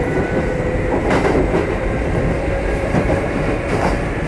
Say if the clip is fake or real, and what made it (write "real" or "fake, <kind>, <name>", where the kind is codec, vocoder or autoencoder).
fake, vocoder, BigVGAN v2